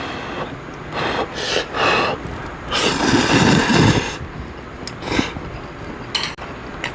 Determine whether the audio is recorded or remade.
recorded